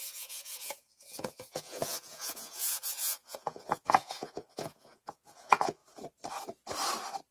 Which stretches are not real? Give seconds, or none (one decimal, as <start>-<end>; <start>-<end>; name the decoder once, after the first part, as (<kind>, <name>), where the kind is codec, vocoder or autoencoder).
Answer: 0.0-5.8 (vocoder, Vocos)